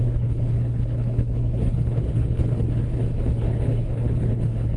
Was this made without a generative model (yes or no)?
no